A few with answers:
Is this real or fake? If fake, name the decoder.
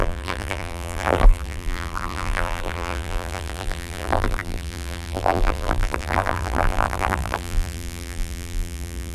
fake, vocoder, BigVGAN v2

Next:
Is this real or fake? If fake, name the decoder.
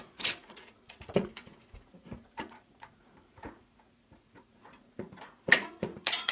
fake, vocoder, Vocos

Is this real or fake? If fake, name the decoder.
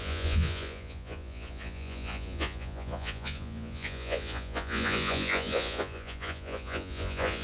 fake, vocoder, Vocos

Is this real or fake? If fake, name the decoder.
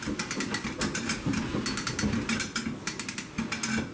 real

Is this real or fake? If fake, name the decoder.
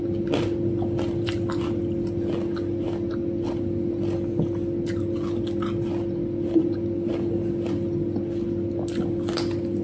real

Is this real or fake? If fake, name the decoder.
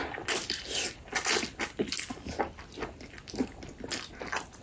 real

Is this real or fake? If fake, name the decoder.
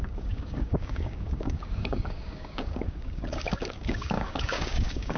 fake, codec, DAC